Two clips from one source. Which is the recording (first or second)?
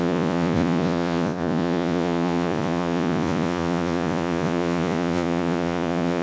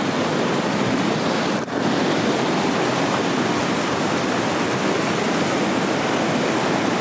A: second